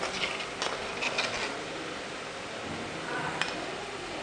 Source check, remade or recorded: recorded